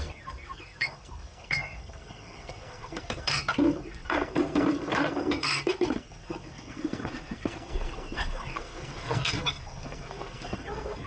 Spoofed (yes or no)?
yes